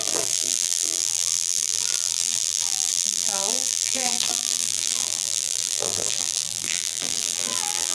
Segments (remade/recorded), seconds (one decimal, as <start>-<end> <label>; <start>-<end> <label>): 0.0-7.9 remade